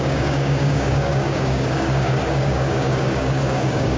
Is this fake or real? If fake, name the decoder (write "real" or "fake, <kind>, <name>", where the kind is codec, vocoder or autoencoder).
fake, codec, DAC